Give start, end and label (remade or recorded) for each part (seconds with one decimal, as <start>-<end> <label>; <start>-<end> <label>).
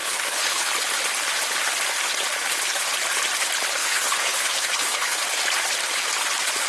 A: 0.0-0.7 remade; 0.7-3.8 recorded; 3.8-5.2 remade; 5.2-6.7 recorded